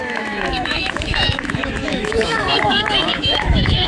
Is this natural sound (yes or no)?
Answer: no